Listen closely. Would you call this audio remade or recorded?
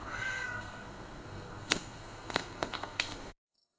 remade